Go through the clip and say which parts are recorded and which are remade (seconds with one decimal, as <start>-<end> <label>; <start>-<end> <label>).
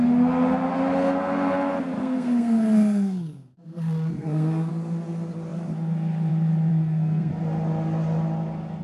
0.0-2.0 recorded; 2.0-4.7 remade; 4.7-6.7 recorded; 6.7-7.3 remade; 7.3-8.8 recorded